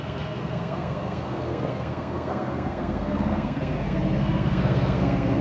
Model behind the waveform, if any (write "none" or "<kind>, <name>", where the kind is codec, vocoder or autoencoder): codec, SNAC